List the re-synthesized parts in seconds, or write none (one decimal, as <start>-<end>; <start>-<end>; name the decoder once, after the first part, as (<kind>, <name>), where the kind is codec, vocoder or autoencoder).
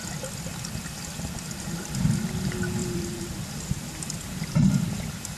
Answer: 2.8-4.8 (vocoder, BigVGAN v2)